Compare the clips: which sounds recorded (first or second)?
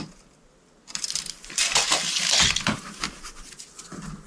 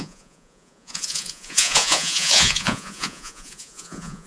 first